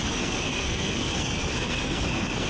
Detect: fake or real fake